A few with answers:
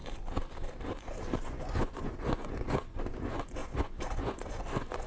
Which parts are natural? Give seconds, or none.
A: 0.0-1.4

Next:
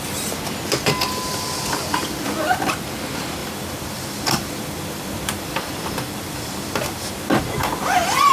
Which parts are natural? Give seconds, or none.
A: 0.0-3.4; 7.1-7.6

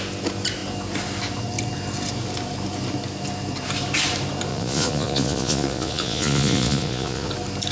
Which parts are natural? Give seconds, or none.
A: 0.0-4.5; 7.3-7.7

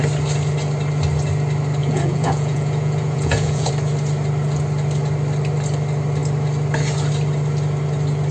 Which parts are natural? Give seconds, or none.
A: 0.0-1.8; 3.7-8.3